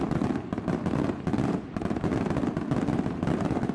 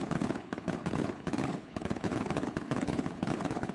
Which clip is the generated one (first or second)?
second